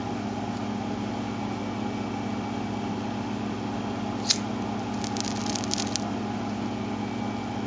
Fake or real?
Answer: real